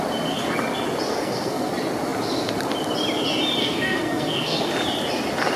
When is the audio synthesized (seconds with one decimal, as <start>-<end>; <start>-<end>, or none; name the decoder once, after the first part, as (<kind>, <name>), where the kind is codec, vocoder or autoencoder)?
1.1-1.7 (codec, SNAC); 3.6-4.7